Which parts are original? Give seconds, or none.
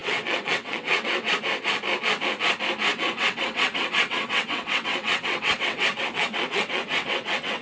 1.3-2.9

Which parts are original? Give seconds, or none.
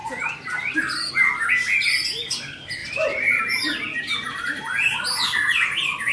0.0-2.8; 3.4-6.1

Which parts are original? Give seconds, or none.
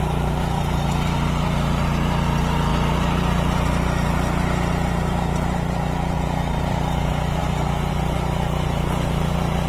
0.0-9.7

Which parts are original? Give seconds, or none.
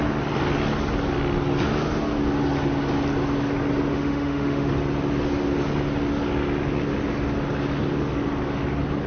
0.0-3.9; 4.7-9.1